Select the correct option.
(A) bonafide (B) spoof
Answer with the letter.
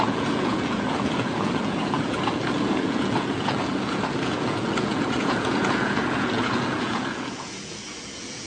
B